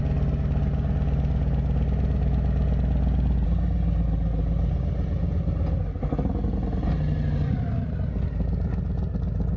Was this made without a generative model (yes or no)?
yes